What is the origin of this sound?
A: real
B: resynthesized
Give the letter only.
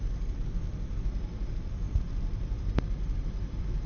B